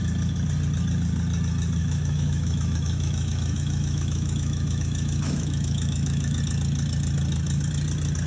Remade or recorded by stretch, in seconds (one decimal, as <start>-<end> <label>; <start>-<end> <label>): 0.0-1.8 recorded; 1.8-6.4 remade; 6.4-8.3 recorded